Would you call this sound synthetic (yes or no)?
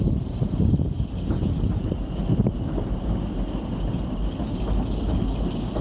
no